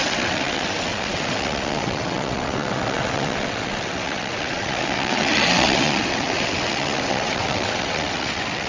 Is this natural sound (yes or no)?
no